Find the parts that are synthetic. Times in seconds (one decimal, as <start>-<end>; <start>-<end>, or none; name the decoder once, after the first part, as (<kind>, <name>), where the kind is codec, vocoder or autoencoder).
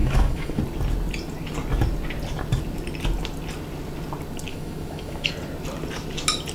0.0-0.6 (autoencoder, DAC-VAE); 4.5-5.3